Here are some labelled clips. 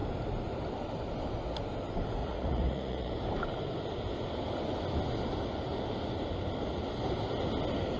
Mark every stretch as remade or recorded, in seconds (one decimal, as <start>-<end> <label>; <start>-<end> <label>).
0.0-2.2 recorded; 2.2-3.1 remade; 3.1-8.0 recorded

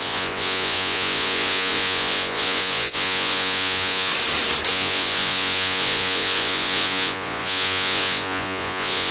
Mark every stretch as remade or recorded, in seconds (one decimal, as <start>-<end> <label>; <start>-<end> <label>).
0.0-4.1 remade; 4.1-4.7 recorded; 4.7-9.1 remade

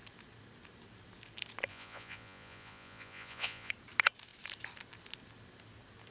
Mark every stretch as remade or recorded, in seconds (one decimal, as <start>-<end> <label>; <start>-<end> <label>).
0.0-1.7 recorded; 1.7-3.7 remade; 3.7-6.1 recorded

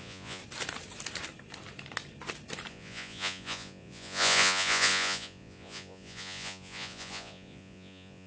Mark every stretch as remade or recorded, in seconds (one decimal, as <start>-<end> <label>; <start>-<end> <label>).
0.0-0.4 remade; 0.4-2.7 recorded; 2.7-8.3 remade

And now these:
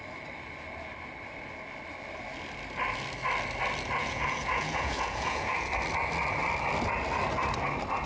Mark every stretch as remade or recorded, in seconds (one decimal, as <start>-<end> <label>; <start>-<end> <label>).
0.0-4.0 recorded; 4.0-5.7 remade; 5.7-8.1 recorded